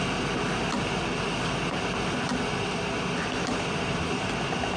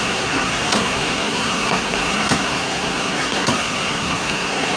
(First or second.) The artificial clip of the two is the second